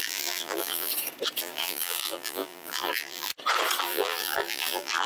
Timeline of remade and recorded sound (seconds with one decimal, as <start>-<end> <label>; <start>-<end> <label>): 0.0-0.9 remade; 0.9-1.4 recorded; 1.4-3.3 remade; 3.3-3.8 recorded; 3.8-5.1 remade